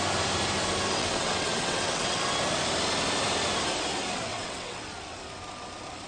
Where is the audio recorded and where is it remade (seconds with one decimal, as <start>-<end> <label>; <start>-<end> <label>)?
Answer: 0.0-1.0 recorded; 1.0-2.2 remade; 2.2-4.3 recorded; 4.3-4.8 remade; 4.8-6.1 recorded